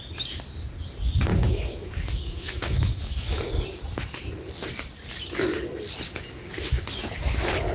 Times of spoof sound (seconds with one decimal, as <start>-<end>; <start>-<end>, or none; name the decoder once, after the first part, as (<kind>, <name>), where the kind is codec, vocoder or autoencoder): 1.3-3.4 (autoencoder, DAC-VAE)